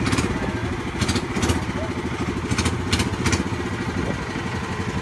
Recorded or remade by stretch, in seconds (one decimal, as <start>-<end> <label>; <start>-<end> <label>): 0.0-5.0 recorded